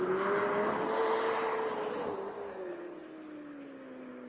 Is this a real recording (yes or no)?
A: yes